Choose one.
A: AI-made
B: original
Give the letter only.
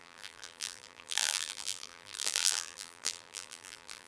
A